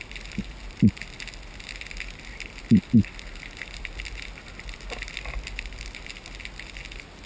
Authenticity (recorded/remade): recorded